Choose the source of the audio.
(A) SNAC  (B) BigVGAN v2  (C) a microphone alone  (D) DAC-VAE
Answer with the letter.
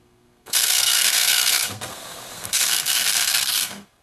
A